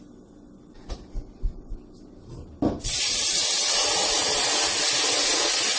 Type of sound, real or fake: real